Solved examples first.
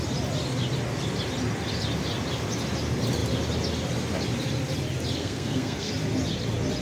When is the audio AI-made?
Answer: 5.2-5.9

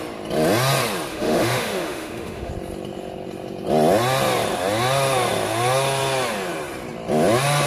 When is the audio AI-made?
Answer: 1.1-2.5

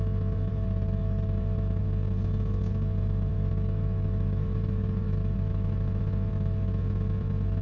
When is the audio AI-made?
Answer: 0.5-1.8; 3.3-6.0

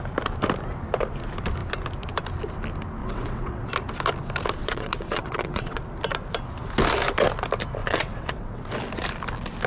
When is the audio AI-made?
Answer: 3.0-3.7; 4.6-5.8; 7.8-8.7

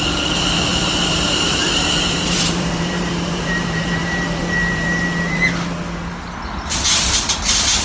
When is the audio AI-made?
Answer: 0.7-5.4

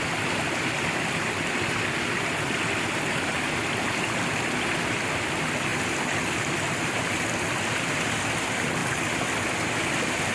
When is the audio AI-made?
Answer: none